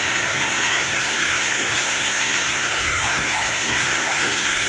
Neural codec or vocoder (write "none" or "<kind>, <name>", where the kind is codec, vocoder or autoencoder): codec, SNAC